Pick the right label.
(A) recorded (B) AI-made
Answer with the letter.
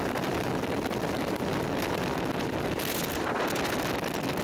A